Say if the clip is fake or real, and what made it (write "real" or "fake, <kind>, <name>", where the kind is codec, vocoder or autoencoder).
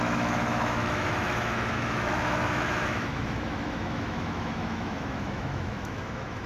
fake, autoencoder, DAC-VAE